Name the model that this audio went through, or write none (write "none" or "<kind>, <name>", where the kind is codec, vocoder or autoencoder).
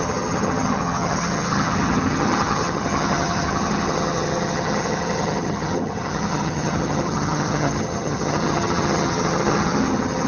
vocoder, HiFi-GAN